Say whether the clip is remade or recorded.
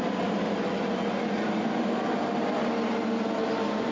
recorded